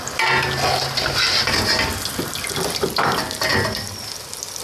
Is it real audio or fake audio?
real